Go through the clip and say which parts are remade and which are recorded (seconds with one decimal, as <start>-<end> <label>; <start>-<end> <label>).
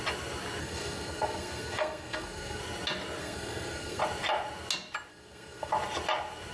0.0-0.6 recorded; 0.6-2.6 remade; 2.6-3.2 recorded; 3.2-4.0 remade; 4.0-5.1 recorded; 5.1-5.7 remade; 5.7-6.5 recorded